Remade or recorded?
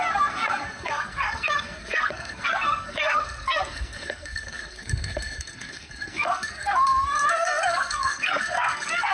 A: remade